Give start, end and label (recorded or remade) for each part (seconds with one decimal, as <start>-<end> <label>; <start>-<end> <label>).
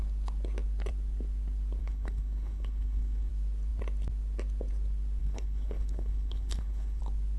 0.0-1.8 recorded; 1.8-3.3 remade; 3.3-5.2 recorded; 5.2-7.0 remade; 7.0-7.4 recorded